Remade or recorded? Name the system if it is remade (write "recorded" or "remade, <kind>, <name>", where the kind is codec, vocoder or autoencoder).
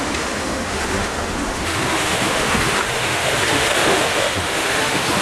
remade, autoencoder, DAC-VAE